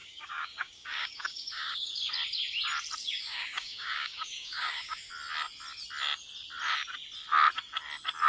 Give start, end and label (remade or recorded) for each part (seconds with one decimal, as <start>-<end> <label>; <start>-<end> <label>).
0.0-2.1 remade; 2.1-3.0 recorded; 3.0-5.1 remade; 5.1-8.3 recorded